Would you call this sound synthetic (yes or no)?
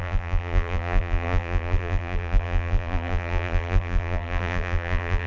yes